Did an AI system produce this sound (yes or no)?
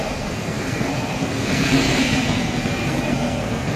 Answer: yes